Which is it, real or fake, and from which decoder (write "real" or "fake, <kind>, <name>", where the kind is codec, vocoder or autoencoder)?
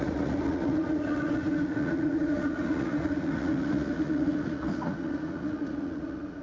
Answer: fake, vocoder, Vocos